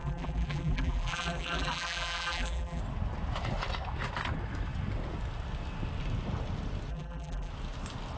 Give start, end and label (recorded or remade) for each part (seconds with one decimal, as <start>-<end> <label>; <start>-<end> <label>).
0.0-2.8 remade; 2.8-6.9 recorded; 6.9-7.5 remade; 7.5-8.2 recorded